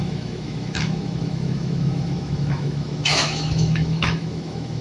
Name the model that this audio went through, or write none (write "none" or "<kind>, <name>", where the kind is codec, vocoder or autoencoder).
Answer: autoencoder, DAC-VAE